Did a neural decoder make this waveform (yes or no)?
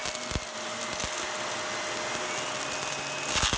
no